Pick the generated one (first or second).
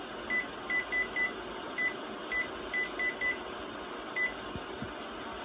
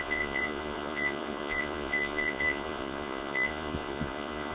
second